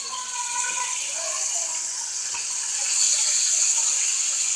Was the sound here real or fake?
fake